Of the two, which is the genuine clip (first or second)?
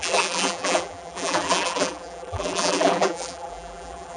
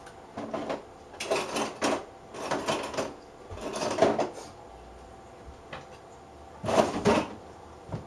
second